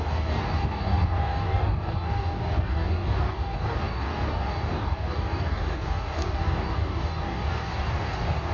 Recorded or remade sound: remade